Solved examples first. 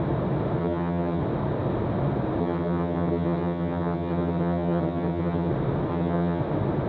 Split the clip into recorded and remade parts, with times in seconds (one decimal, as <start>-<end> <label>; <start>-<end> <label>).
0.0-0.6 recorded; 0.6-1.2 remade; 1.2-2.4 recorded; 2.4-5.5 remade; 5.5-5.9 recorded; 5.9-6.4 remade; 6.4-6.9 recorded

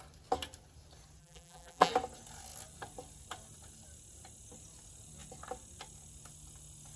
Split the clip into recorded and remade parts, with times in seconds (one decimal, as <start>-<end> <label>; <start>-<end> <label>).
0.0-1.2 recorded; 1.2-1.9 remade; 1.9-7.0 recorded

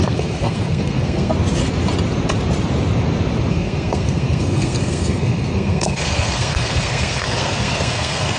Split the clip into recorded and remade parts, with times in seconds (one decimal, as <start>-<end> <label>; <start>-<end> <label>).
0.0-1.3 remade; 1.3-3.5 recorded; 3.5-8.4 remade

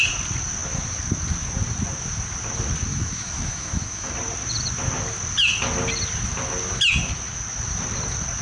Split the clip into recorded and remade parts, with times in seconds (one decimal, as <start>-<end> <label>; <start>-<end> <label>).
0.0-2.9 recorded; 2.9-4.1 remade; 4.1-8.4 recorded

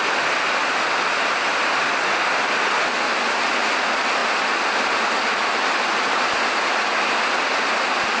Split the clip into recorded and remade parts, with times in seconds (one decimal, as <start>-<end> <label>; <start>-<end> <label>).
0.0-8.2 recorded

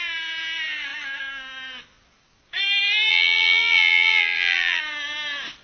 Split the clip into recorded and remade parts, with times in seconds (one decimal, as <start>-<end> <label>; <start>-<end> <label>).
0.0-3.1 recorded; 3.1-4.8 remade; 4.8-5.6 recorded